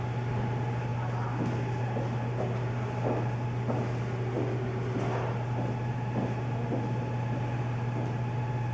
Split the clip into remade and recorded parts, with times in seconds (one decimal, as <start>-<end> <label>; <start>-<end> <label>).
0.0-8.7 recorded

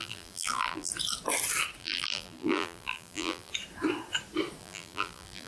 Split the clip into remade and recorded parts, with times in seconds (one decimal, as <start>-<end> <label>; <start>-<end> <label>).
0.0-0.9 remade; 0.9-1.8 recorded; 1.8-3.5 remade; 3.5-4.6 recorded; 4.6-5.5 remade

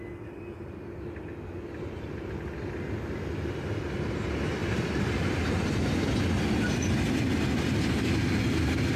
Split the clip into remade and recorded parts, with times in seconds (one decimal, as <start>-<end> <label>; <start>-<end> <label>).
0.0-9.0 recorded

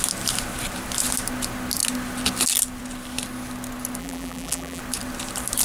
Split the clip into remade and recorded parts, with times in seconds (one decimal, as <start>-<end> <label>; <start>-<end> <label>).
0.0-4.0 recorded; 4.0-4.8 remade; 4.8-5.6 recorded

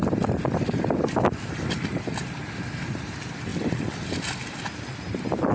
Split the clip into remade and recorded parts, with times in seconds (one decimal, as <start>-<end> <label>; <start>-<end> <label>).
0.0-3.5 recorded; 3.5-4.2 remade; 4.2-5.5 recorded

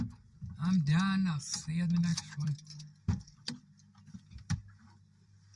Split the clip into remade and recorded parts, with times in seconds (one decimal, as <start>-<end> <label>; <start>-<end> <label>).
0.0-2.1 recorded; 2.1-5.6 remade